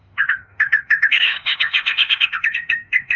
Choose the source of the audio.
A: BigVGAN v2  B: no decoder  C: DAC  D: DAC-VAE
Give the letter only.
D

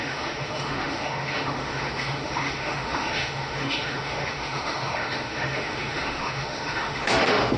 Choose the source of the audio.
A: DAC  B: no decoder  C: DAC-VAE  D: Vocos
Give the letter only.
C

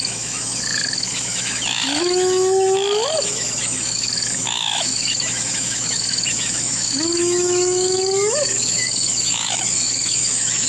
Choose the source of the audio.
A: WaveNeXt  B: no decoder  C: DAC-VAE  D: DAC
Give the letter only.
C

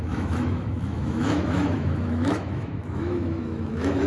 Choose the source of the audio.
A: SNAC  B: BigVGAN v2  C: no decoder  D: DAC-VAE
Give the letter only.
D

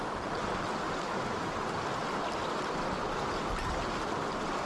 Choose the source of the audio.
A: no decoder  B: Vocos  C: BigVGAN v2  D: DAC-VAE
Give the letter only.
A